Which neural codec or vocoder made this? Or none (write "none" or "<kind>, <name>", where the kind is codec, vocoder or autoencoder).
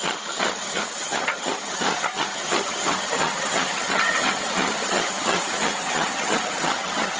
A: vocoder, HiFi-GAN